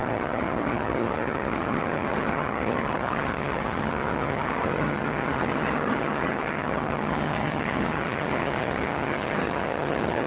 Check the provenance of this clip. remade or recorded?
remade